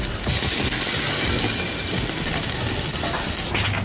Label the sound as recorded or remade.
recorded